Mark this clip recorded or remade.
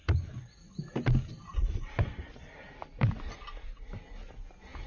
recorded